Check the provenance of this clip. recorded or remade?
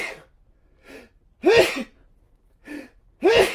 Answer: recorded